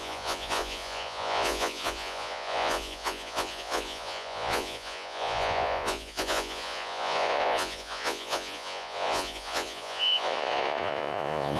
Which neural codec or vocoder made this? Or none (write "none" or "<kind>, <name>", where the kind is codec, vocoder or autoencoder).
vocoder, Vocos